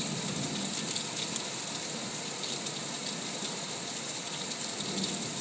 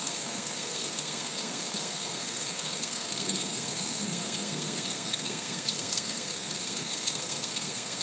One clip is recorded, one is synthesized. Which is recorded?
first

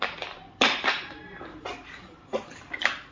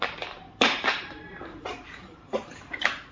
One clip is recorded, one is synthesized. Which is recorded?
first